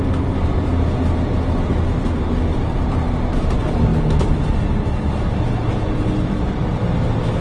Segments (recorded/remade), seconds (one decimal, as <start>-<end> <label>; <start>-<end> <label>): 0.0-7.4 recorded